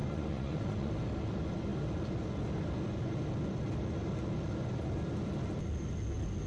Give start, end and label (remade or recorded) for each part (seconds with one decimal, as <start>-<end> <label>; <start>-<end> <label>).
0.0-0.9 remade; 0.9-6.5 recorded